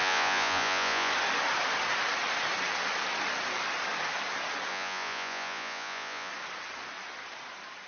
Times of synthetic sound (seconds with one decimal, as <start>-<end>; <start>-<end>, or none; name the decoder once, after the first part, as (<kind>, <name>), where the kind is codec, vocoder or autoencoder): 0.0-1.1 (vocoder, Vocos); 4.7-6.3